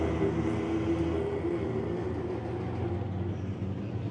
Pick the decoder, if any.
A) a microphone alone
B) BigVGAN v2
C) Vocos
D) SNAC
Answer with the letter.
A